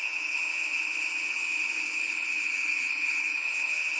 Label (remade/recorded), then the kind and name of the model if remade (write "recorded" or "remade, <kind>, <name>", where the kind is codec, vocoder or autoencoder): remade, vocoder, HiFi-GAN